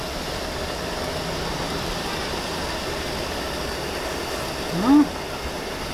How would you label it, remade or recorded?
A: recorded